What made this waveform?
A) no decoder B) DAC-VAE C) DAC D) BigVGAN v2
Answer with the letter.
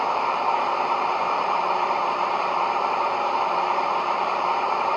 D